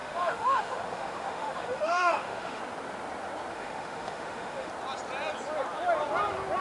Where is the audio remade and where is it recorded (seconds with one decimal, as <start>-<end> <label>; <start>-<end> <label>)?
0.0-2.6 remade; 2.6-3.5 recorded; 3.5-4.7 remade; 4.7-6.6 recorded